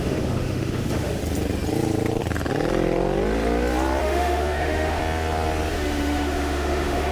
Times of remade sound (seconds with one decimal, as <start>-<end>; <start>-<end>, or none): 0.0-1.2; 4.0-5.0; 5.7-7.1

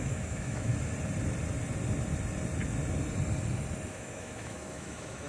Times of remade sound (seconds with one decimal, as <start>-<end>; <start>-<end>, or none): 0.0-0.7; 3.9-5.3

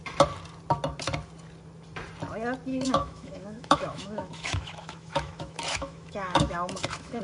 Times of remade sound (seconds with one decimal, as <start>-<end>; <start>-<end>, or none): 2.7-7.2